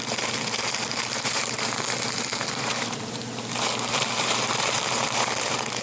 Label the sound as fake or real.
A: fake